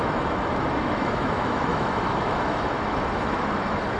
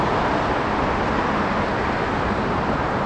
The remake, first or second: first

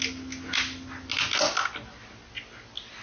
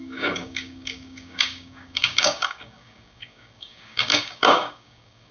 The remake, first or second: second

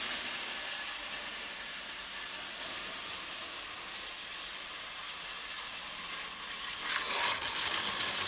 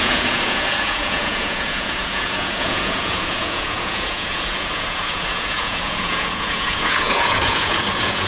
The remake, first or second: second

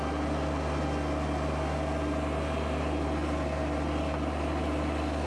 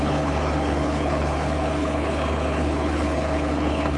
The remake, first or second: second